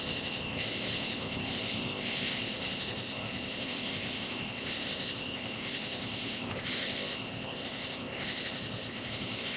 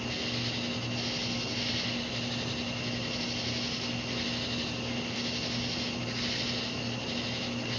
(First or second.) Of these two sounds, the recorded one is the second